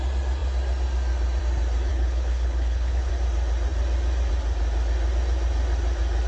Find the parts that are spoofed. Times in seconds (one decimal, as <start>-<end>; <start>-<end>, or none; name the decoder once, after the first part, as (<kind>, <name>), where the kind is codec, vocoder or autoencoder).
1.9-3.1 (codec, HILCodec)